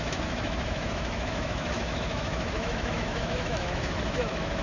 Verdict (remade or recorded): remade